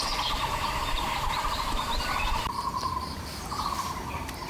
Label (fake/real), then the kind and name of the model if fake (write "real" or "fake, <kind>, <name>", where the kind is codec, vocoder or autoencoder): fake, vocoder, BigVGAN v2